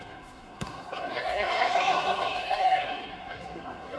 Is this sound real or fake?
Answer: fake